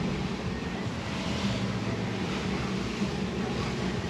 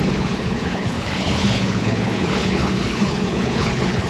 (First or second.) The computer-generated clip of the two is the second